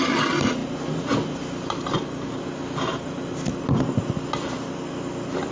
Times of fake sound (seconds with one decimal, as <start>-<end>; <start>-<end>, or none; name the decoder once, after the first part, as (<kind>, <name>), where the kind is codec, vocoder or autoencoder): none